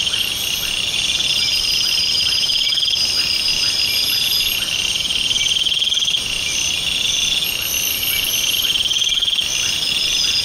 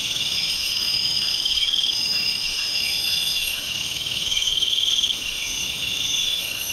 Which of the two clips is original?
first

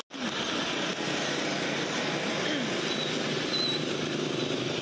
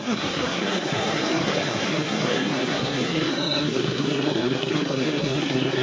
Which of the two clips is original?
first